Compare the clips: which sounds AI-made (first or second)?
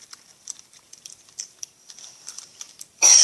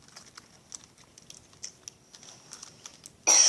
first